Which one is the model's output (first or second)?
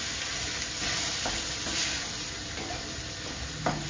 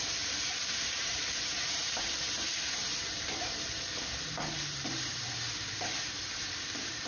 second